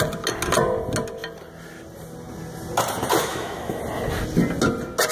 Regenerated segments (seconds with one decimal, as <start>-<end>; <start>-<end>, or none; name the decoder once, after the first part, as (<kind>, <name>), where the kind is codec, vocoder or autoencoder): 3.2-3.8 (autoencoder, DAC-VAE)